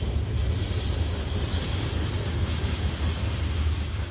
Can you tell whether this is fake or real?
real